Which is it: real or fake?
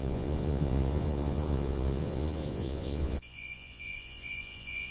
fake